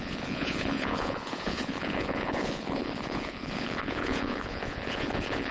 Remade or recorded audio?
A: remade